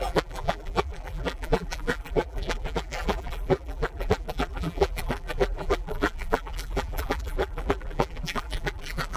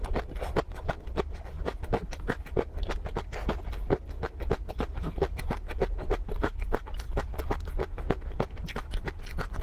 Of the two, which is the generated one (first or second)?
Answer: first